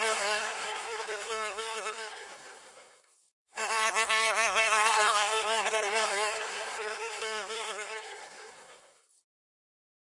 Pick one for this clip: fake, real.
fake